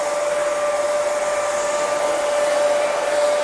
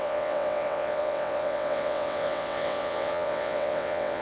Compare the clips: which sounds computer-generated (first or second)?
second